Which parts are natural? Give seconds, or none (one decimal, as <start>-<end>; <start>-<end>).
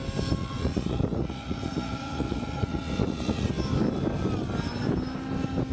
0.0-0.4; 3.5-5.7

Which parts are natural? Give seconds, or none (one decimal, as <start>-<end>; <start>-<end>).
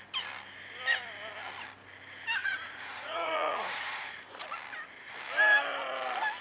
0.0-2.4; 4.2-6.4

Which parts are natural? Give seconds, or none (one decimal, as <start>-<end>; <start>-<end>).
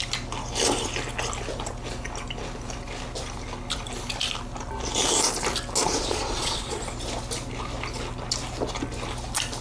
0.0-5.8; 6.8-9.6